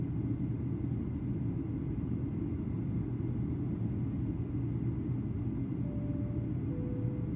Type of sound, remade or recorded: recorded